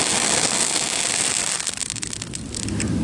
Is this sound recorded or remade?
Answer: recorded